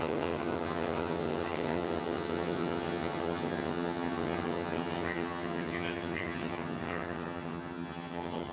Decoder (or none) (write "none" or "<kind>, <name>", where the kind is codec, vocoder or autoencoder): vocoder, HiFi-GAN